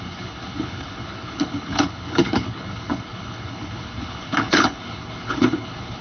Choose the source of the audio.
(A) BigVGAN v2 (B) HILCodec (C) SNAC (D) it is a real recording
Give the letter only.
B